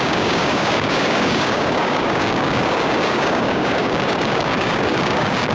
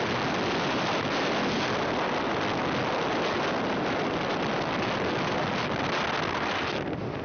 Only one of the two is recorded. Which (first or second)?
second